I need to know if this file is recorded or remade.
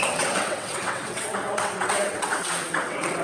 remade